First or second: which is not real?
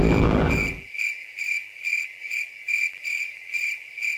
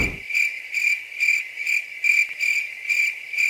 first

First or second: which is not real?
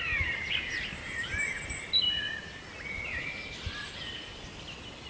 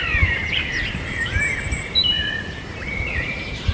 second